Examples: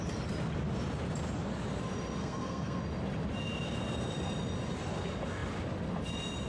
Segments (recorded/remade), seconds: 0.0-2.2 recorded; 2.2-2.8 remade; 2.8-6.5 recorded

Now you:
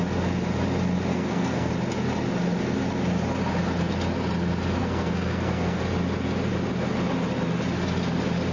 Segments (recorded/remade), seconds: 0.0-1.1 recorded; 1.1-1.7 remade; 1.7-4.8 recorded; 4.8-5.8 remade; 5.8-8.5 recorded

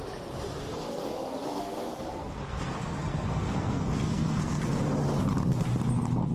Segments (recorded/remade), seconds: 0.0-0.9 recorded; 0.9-4.7 remade; 4.7-6.3 recorded